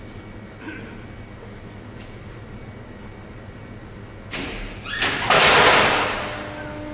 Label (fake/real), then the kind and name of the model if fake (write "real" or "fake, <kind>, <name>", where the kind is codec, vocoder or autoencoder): real